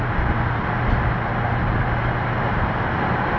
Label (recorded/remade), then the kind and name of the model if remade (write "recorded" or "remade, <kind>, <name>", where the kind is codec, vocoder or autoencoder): recorded